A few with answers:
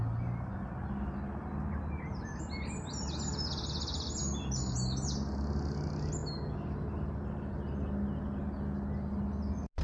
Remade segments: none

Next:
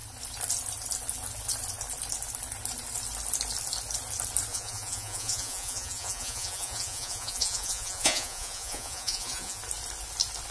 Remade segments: 4.5-9.6

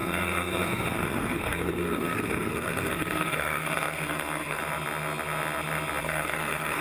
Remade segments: 0.0-4.6; 6.0-6.8

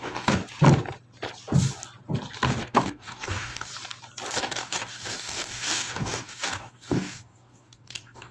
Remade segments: 0.0-0.4; 2.6-3.7; 4.4-8.3